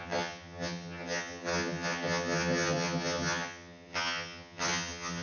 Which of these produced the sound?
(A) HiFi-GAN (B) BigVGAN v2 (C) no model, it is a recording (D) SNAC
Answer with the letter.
A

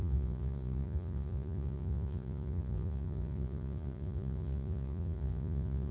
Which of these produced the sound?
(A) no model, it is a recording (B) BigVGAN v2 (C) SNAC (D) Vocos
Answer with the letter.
D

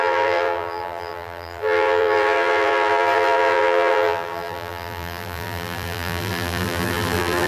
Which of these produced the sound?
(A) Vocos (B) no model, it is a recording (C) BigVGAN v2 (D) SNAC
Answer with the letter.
C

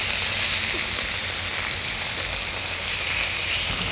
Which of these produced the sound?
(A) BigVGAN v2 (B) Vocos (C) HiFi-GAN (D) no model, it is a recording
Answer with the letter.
D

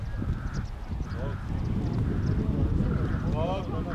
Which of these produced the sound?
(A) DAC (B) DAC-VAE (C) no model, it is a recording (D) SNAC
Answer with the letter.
C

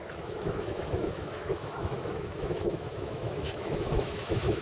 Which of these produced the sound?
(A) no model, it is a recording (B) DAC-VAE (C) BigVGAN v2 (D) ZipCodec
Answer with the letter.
B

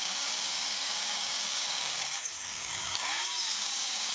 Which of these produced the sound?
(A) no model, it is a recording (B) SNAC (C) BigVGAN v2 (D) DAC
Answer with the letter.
D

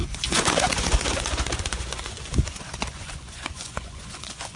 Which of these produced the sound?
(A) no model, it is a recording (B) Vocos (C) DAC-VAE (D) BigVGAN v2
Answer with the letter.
B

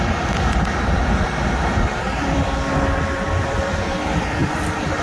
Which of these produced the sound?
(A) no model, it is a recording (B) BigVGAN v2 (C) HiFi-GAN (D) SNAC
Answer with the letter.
B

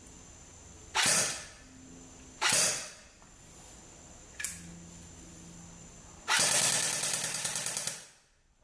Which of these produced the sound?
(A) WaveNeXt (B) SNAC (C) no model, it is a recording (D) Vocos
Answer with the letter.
C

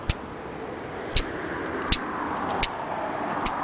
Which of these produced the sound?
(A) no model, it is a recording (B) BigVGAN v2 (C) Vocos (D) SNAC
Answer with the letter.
A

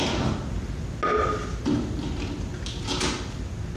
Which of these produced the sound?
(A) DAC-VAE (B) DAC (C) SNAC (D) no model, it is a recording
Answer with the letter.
D